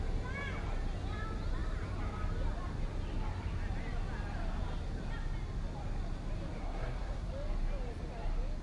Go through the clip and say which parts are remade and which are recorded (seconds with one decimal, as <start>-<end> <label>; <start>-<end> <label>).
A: 0.0-6.6 recorded; 6.6-7.3 remade; 7.3-8.6 recorded